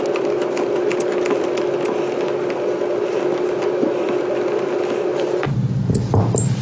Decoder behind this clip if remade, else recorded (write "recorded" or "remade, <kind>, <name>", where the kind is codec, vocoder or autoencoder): recorded